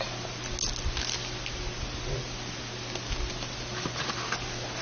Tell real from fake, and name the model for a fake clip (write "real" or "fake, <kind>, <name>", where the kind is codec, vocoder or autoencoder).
real